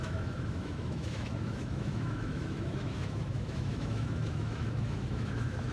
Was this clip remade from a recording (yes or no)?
yes